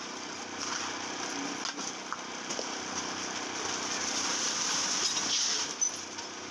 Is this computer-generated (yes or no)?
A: no